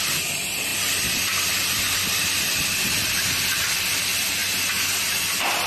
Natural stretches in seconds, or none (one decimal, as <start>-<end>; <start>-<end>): 4.4-5.0

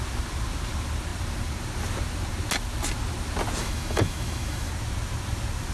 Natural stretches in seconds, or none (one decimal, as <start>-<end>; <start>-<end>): 0.0-3.6; 4.7-5.7